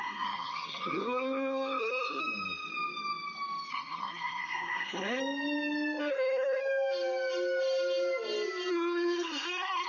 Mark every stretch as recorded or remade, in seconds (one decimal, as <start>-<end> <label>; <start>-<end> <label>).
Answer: 0.0-2.2 remade; 2.2-3.7 recorded; 3.7-5.2 remade; 5.2-6.0 recorded; 6.0-6.6 remade; 6.6-8.7 recorded; 8.7-9.9 remade